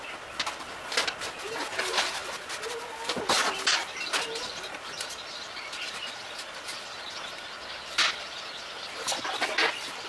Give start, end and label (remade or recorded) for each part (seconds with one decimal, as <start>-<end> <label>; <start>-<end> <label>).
0.0-10.1 recorded